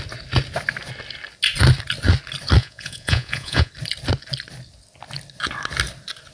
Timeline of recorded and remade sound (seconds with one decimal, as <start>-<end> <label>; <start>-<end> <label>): 0.0-2.6 recorded; 2.6-3.7 remade; 3.7-6.3 recorded